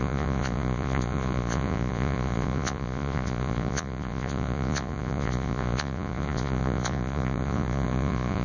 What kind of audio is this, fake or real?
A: fake